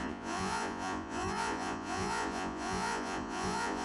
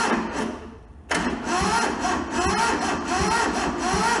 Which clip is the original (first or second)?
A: second